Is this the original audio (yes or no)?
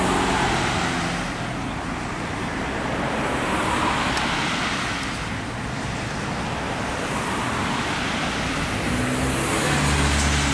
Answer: yes